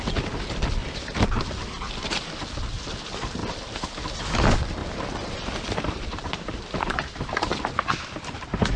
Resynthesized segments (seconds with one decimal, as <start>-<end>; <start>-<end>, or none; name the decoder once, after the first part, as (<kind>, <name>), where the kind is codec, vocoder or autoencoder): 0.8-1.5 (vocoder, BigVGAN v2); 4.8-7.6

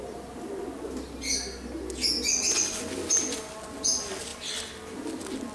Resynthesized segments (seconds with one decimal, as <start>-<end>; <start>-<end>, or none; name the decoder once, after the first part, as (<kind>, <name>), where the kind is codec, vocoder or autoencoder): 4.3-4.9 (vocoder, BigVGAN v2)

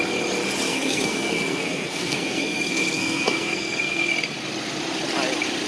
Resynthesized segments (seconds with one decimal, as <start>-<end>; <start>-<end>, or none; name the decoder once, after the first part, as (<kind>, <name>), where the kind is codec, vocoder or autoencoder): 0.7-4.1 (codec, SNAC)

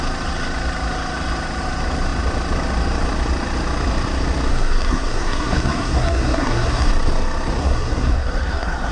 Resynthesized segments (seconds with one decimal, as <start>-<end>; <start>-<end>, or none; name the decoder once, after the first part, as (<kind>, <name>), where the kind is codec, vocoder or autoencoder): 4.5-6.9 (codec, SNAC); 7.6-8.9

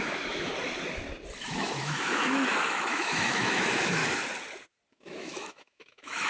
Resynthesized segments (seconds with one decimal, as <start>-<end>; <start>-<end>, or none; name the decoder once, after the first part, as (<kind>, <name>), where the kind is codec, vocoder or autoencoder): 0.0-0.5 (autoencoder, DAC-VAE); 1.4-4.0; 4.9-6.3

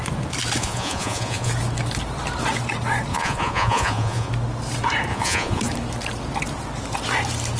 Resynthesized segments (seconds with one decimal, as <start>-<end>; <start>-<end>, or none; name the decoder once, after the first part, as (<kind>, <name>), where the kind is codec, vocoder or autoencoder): 0.6-1.5 (vocoder, Vocos); 3.1-4.3; 5.1-5.6

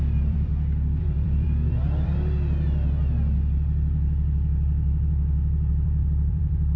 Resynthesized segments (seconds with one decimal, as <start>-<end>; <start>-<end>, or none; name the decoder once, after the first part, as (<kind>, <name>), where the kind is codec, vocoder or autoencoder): 0.0-0.5 (vocoder, BigVGAN v2); 1.0-2.1; 5.7-6.8

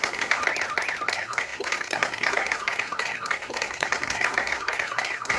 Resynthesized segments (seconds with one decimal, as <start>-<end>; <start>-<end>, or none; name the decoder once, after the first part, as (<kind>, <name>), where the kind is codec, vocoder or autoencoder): 0.0-0.4 (codec, SNAC); 1.1-5.4